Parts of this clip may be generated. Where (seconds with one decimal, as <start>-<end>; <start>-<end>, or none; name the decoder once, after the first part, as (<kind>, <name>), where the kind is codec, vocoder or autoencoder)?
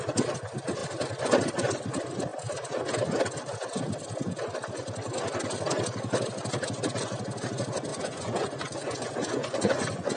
7.9-10.2 (vocoder, Vocos)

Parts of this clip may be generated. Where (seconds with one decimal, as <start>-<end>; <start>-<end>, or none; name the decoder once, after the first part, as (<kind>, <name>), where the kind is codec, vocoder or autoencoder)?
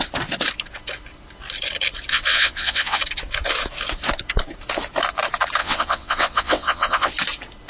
2.1-3.0 (vocoder, WaveNeXt); 5.6-7.1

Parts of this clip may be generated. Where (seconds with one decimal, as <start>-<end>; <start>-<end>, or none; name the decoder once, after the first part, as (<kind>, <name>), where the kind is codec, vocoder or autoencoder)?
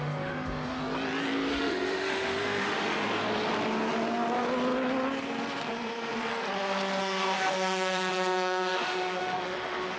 0.0-0.8 (autoencoder, DAC-VAE); 1.5-3.0; 7.0-10.0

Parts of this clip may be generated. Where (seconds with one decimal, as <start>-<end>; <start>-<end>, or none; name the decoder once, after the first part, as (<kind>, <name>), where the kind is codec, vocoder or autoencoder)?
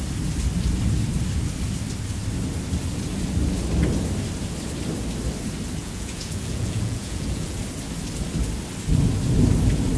5.8-7.6 (vocoder, Vocos)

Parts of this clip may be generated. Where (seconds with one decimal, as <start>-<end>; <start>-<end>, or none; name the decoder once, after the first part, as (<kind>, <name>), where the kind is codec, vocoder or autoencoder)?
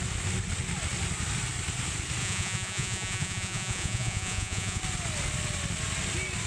2.2-4.8 (vocoder, Vocos)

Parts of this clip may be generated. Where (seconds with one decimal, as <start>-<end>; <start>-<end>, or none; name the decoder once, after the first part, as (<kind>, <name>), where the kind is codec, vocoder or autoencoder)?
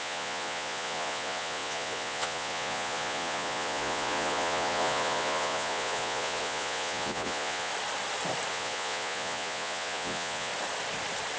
0.0-7.7 (vocoder, Vocos); 8.5-10.5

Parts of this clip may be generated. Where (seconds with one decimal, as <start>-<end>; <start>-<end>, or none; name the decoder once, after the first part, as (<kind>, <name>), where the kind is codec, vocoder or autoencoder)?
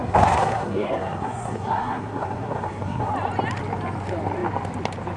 0.0-3.1 (codec, SNAC)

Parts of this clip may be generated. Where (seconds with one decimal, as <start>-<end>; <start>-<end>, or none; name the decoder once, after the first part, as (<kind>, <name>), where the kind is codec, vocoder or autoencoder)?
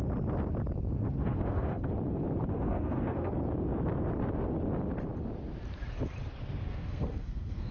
1.2-1.9 (codec, SNAC); 2.5-3.3; 6.6-7.7